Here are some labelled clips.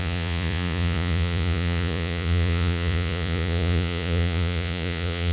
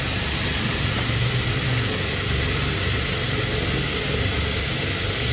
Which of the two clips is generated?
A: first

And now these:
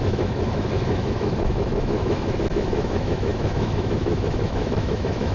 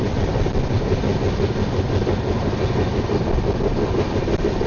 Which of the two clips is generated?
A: first